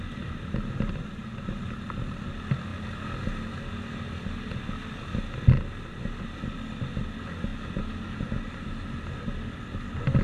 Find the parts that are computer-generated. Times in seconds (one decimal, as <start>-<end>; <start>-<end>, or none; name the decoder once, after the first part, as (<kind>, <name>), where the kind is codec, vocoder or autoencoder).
none